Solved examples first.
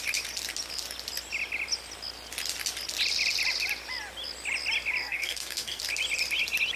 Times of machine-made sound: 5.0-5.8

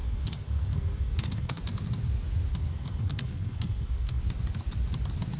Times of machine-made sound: 0.0-1.6; 2.5-4.2

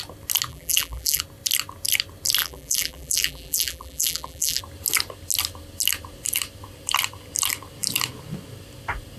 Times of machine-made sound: 0.5-1.2; 2.4-4.6